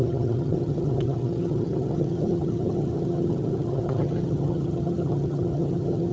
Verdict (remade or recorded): remade